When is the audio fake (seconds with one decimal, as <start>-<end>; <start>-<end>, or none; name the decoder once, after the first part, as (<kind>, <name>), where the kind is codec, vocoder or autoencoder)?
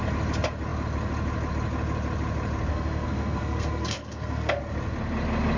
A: 2.7-4.6 (codec, SNAC)